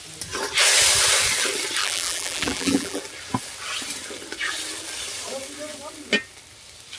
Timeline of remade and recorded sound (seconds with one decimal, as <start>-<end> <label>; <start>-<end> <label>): 0.0-1.8 recorded; 1.8-3.0 remade; 3.0-7.0 recorded